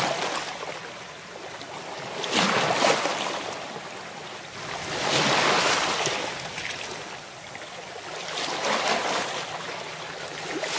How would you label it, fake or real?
real